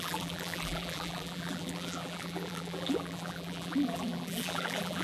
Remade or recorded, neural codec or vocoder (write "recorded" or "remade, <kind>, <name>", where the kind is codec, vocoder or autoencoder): remade, vocoder, BigVGAN v2